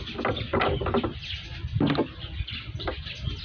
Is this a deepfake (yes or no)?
no